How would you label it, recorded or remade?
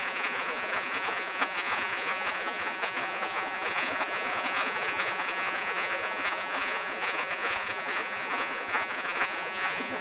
remade